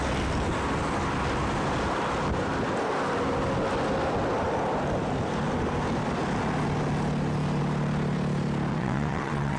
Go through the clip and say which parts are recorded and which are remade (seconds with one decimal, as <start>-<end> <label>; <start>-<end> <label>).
0.0-8.7 recorded; 8.7-9.6 remade